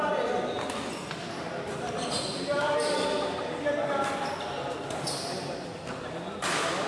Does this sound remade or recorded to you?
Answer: recorded